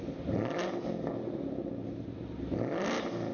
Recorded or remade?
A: recorded